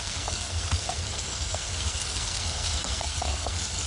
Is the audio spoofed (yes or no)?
yes